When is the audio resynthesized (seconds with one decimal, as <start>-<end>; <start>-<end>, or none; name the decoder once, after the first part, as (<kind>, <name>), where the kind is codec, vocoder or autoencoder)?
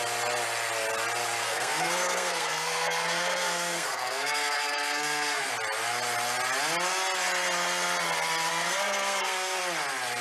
1.4-5.5 (codec, SNAC); 8.5-9.6